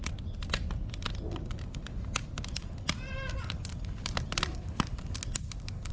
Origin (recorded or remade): recorded